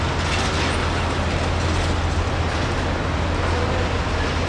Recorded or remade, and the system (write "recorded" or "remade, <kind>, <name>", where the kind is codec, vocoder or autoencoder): recorded